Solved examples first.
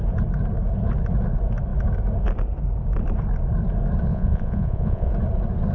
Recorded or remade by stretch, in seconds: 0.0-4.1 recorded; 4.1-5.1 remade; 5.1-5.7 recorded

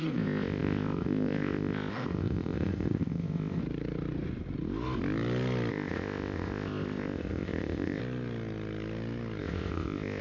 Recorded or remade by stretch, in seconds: 0.0-3.6 remade; 3.6-5.7 recorded; 5.7-8.0 remade; 8.0-9.4 recorded; 9.4-10.2 remade